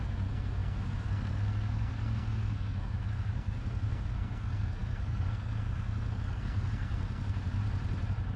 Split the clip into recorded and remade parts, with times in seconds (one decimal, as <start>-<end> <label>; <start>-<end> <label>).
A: 0.0-7.6 remade; 7.6-8.4 recorded